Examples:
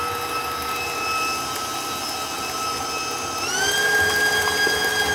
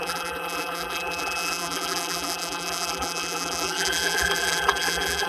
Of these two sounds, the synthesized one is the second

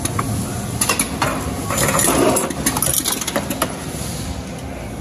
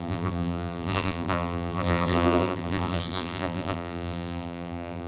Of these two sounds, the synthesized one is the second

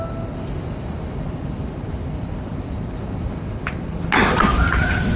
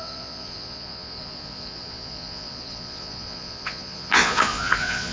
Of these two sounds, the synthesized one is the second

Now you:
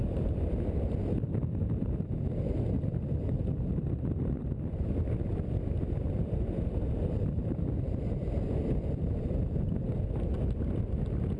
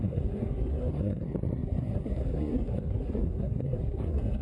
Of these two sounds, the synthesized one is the second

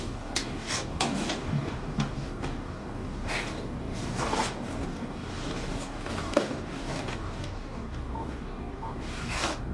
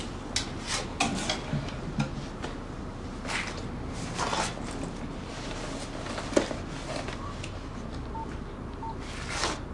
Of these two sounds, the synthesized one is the first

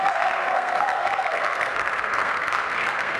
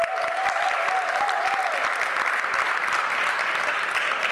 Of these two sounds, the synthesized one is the first